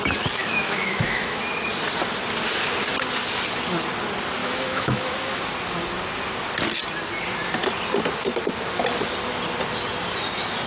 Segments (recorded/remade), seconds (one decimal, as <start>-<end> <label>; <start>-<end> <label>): 0.0-0.4 recorded; 0.4-1.4 remade; 1.4-4.4 recorded; 4.4-5.4 remade; 5.4-10.7 recorded